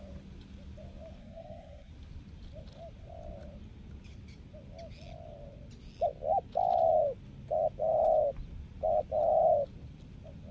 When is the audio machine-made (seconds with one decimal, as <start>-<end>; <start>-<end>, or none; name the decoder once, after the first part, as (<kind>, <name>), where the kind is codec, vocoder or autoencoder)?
1.2-1.9 (codec, SNAC)